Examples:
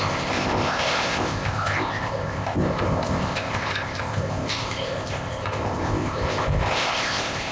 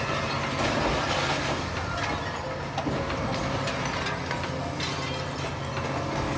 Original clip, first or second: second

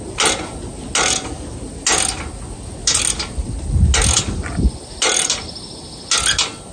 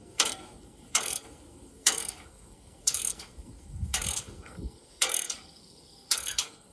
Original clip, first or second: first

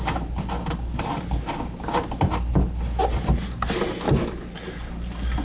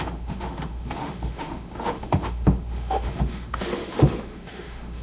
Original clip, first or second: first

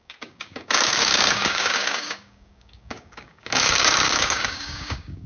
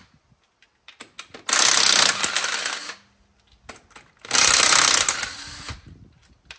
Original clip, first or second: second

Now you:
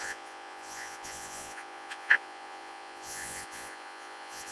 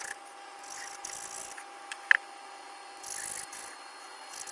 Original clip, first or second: second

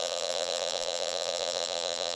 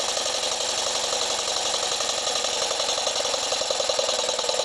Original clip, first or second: second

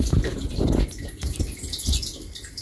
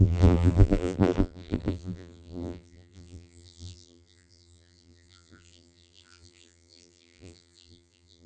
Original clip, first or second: first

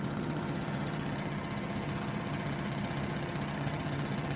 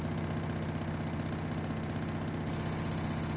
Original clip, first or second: second